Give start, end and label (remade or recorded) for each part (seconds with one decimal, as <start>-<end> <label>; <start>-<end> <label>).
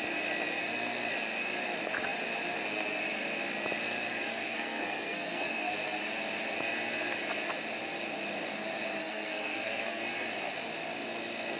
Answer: 0.0-4.2 recorded; 4.2-5.7 remade; 5.7-9.0 recorded; 9.0-10.0 remade; 10.0-11.6 recorded